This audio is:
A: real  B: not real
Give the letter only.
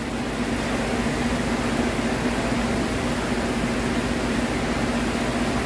A